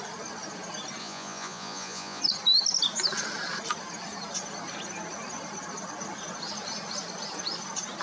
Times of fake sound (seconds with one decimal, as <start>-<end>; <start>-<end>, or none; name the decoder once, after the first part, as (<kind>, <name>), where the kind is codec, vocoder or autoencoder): 1.0-2.2 (vocoder, Vocos)